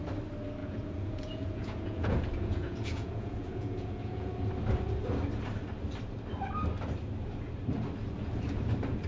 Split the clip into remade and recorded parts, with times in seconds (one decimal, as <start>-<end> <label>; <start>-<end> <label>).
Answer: 0.0-0.6 recorded; 0.6-4.3 remade; 4.3-9.1 recorded

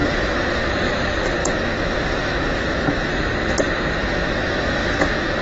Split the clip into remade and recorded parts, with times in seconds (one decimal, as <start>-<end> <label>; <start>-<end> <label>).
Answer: 0.0-0.7 remade; 0.7-1.4 recorded; 1.4-3.1 remade; 3.1-4.0 recorded; 4.0-5.4 remade